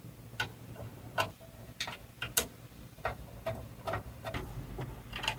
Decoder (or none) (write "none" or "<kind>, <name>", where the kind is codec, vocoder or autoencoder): none